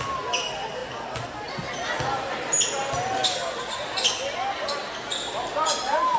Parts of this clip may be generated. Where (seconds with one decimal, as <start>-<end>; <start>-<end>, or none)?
none